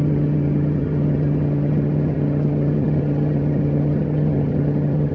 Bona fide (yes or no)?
no